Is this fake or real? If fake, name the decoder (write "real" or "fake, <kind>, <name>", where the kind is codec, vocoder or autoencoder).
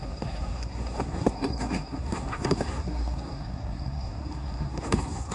fake, codec, SNAC